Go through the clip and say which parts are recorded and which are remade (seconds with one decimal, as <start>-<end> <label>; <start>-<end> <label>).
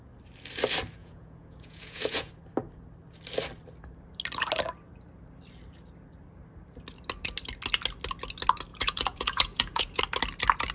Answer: 0.0-1.0 recorded; 1.0-2.3 remade; 2.3-8.7 recorded; 8.7-10.0 remade; 10.0-10.7 recorded